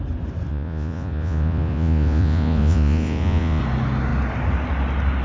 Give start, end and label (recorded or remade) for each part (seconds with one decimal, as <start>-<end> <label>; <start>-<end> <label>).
0.0-0.5 recorded; 0.5-3.6 remade; 3.6-5.2 recorded